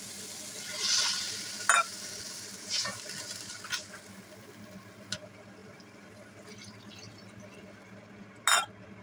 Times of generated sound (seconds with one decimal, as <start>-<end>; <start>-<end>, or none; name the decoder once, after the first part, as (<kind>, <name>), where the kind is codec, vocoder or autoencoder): none